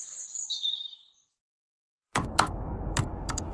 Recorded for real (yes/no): no